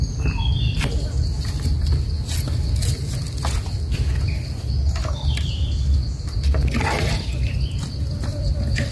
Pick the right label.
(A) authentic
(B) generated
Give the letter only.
A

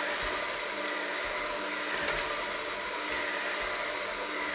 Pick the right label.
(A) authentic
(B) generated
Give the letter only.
A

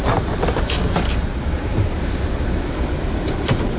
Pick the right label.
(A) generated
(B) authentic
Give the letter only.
A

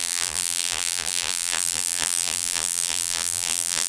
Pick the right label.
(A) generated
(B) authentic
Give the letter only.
A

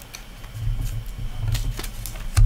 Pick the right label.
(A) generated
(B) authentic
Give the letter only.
B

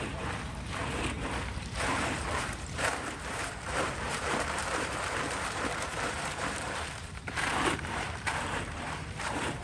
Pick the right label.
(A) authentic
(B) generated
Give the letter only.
B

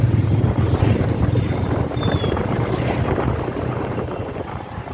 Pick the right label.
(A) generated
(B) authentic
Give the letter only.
A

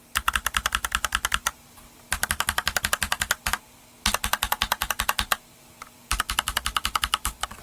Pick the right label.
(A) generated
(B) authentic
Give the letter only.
B